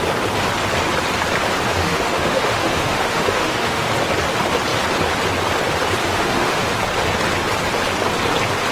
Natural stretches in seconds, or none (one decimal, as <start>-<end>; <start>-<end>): 0.0-1.7; 3.9-6.0; 6.7-8.7